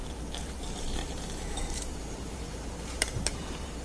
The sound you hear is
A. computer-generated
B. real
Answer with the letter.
A